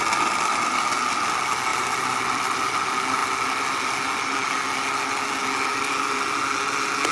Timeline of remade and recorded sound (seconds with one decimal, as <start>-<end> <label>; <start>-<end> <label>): 0.0-1.7 recorded; 1.7-2.2 remade; 2.2-7.1 recorded